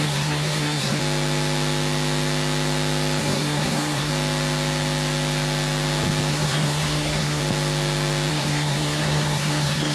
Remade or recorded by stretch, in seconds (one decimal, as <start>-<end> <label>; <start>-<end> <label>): 0.0-1.0 remade; 1.0-3.2 recorded; 3.2-4.1 remade; 4.1-6.3 recorded; 6.3-7.4 remade; 7.4-8.3 recorded; 8.3-9.9 remade

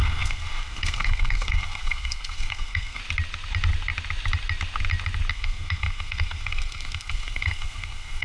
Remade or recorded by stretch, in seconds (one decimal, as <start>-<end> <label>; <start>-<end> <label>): 0.0-3.0 remade; 3.0-5.3 recorded; 5.3-8.2 remade

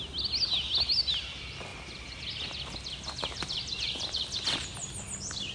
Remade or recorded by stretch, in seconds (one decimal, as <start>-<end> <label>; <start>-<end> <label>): 0.0-5.5 recorded